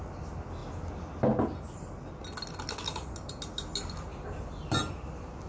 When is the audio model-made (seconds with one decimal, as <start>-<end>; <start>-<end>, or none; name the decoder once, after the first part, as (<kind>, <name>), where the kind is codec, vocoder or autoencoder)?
none